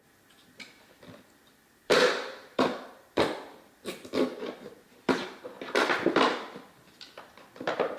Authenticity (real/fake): fake